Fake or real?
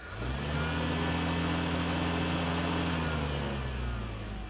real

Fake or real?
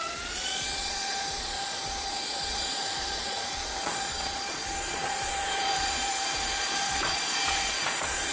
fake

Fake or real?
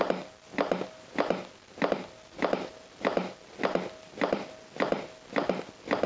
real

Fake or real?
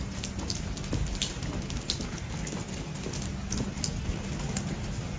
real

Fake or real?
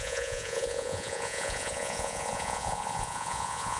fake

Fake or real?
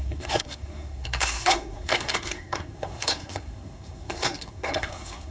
fake